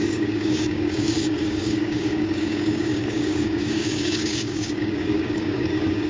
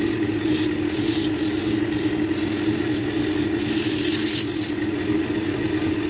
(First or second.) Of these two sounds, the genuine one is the second